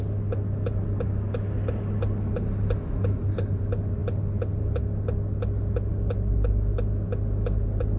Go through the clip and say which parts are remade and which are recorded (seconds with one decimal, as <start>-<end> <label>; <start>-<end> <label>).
0.0-8.0 recorded